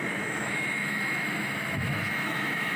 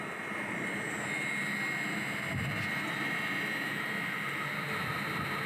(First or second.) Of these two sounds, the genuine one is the second